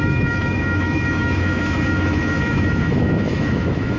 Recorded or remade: remade